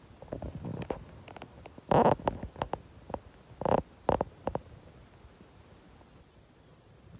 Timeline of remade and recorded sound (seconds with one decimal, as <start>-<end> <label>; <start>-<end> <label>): 0.0-7.2 recorded